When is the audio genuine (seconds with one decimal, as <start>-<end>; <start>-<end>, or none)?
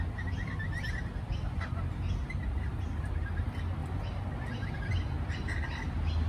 0.0-6.3